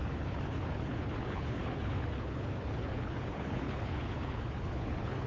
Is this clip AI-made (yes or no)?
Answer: yes